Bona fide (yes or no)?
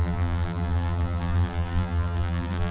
no